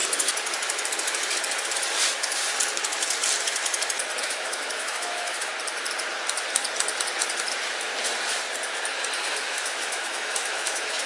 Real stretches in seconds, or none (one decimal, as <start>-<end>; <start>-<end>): 0.0-4.2; 5.5-9.5